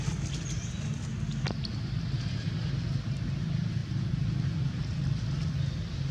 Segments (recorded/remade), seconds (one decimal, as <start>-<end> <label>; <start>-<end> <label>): 0.0-3.8 recorded; 3.8-4.8 remade; 4.8-6.1 recorded